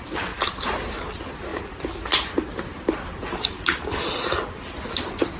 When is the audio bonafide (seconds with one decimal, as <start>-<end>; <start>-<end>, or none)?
0.0-1.5; 3.3-5.4